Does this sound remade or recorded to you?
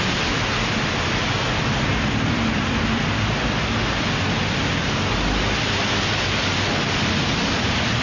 recorded